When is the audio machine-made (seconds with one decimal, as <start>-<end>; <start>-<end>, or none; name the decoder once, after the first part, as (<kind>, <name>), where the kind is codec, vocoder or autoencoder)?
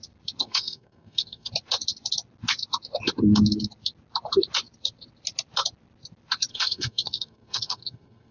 0.4-1.5 (codec, SNAC); 6.5-8.3